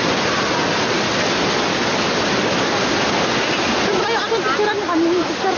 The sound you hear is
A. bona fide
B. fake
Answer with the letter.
A